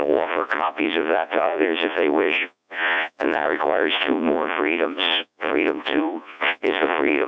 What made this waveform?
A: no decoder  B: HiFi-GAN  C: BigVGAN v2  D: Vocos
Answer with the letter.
D